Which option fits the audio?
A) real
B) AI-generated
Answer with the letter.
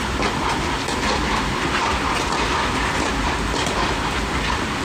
B